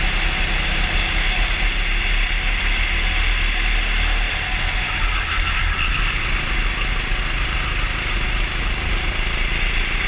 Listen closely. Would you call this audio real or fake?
real